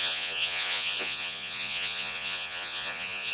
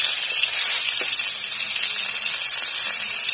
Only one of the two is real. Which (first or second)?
second